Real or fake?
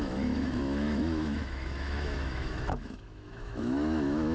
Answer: fake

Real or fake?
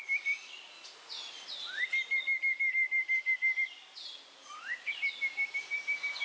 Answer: real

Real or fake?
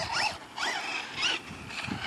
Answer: real